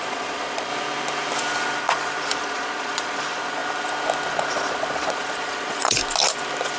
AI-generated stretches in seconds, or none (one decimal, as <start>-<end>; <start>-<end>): 0.0-0.7; 1.8-3.6; 4.3-6.0